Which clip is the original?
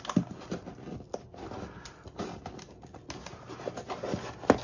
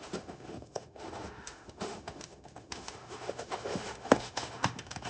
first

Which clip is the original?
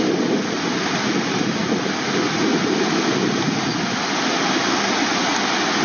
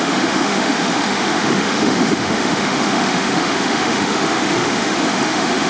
first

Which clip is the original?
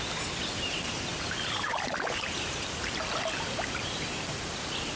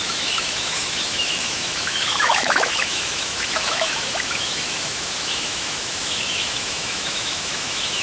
first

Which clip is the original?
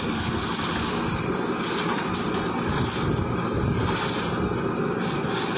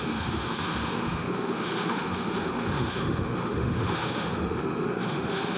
first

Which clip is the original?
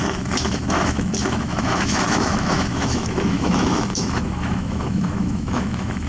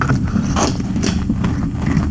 second